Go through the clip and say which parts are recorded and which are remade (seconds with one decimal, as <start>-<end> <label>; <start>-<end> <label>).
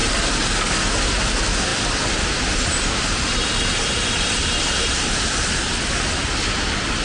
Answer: 0.0-1.7 recorded; 1.7-5.9 remade; 5.9-7.0 recorded